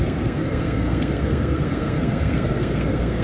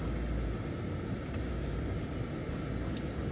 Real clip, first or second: second